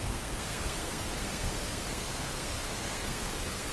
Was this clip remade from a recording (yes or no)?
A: yes